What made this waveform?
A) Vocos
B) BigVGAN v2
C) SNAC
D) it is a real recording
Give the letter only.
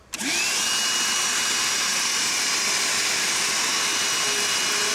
D